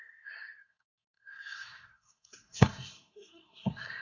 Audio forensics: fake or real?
fake